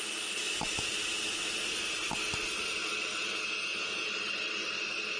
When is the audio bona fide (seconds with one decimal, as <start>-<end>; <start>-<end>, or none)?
0.0-3.2; 4.1-5.2